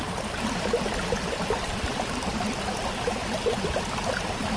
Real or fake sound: real